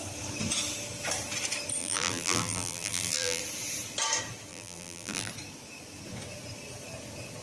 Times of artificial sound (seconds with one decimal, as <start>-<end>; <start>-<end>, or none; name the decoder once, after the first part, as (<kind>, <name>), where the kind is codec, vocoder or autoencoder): 1.8-3.4 (vocoder, BigVGAN v2); 4.5-5.3